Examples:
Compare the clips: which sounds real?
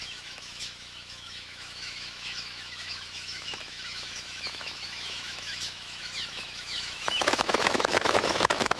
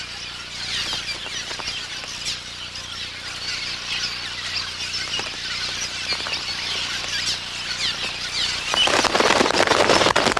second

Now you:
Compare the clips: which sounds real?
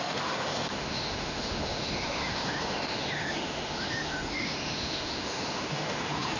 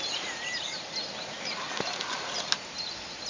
second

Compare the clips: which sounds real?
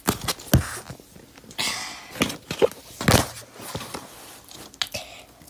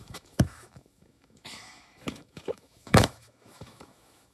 first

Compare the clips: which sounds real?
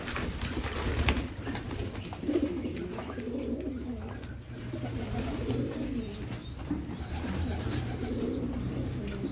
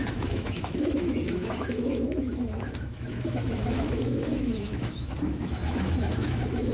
first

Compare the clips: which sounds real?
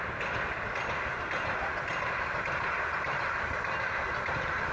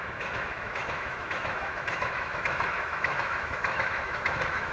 first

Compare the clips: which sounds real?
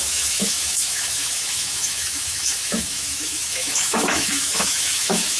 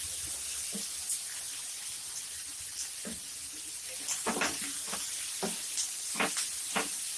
second